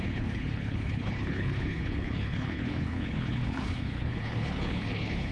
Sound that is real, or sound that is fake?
fake